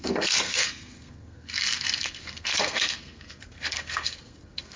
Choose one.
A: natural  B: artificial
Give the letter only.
B